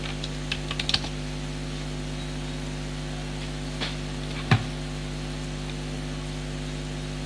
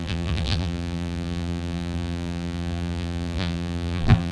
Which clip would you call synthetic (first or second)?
second